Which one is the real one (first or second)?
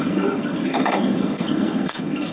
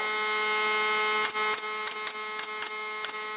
second